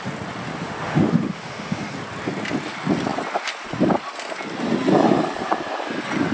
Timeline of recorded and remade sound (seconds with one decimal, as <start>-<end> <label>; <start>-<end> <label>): 0.0-0.5 recorded; 0.5-1.8 remade; 1.8-6.3 recorded